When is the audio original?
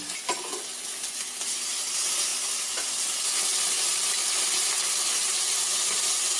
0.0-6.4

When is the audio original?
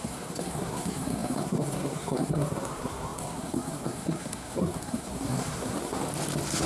6.0-6.7